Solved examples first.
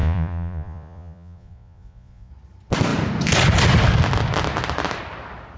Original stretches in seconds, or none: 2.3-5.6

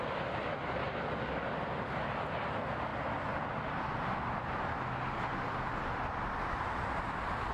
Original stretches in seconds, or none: 0.0-7.5

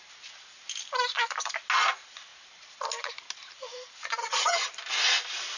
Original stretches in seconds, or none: 0.0-4.2; 4.7-5.6

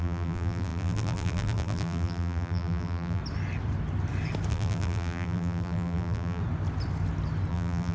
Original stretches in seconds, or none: 3.2-4.5; 6.4-7.5

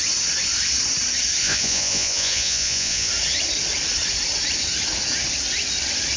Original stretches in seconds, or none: 0.0-1.4; 3.1-6.2